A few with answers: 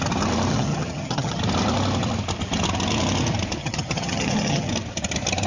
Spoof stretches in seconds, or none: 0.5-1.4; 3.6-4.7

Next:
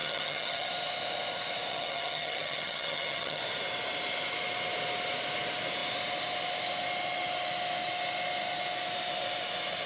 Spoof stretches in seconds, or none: 0.0-0.7; 1.7-3.4